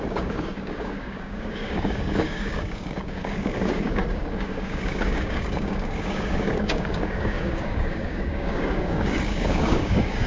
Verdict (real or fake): fake